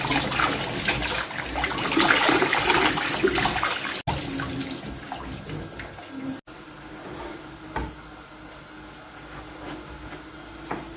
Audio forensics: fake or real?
real